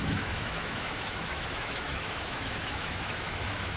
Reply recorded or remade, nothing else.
remade